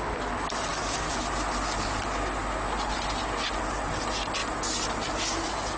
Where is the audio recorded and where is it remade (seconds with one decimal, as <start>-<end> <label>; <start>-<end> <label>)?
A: 0.0-5.8 recorded